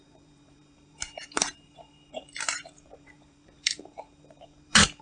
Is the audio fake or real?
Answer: fake